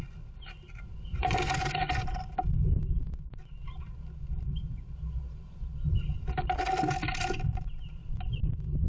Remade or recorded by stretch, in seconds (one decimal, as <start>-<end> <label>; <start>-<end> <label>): 0.0-1.1 recorded; 1.1-2.4 remade; 2.4-8.0 recorded; 8.0-8.5 remade; 8.5-8.9 recorded